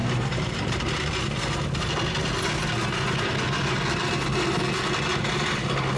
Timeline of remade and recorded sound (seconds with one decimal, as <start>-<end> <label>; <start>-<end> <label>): 0.0-1.1 remade; 1.1-5.1 recorded; 5.1-5.6 remade; 5.6-6.0 recorded